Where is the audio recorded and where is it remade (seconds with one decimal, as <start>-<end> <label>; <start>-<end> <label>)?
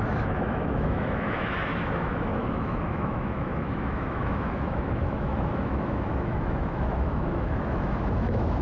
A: 0.0-8.6 remade